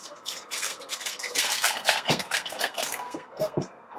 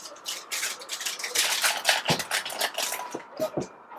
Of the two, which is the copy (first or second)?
first